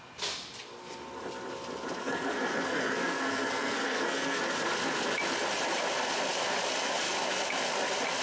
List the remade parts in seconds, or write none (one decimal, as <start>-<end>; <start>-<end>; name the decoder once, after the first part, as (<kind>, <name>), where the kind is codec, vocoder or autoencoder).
2.0-4.4 (codec, SNAC)